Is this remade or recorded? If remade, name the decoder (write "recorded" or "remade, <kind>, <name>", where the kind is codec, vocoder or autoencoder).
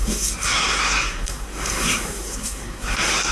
remade, codec, SNAC